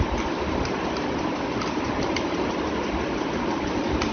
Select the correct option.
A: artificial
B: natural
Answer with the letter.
B